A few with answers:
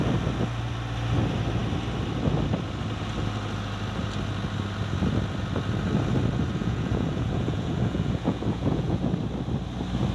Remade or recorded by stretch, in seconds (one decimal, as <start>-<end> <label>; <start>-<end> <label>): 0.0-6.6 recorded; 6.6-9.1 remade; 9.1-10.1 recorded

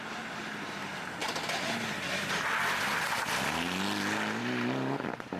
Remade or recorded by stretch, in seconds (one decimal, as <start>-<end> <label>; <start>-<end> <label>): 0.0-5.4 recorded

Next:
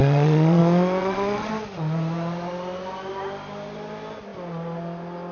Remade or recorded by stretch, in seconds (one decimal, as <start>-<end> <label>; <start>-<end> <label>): 0.0-0.6 remade; 0.6-1.0 recorded; 1.0-1.5 remade; 1.5-5.3 recorded

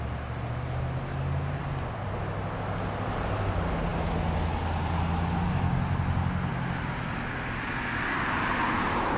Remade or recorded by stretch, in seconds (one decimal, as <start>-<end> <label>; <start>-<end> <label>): 0.0-9.2 recorded

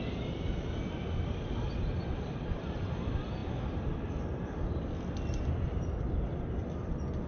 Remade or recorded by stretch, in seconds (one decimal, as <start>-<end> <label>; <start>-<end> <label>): 0.0-7.3 recorded

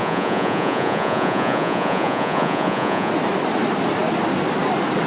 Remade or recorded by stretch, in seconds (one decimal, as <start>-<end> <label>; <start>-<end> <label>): 0.0-3.1 remade; 3.1-5.1 recorded